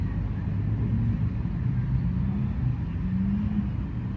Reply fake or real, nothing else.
real